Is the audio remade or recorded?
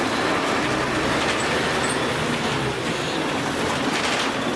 recorded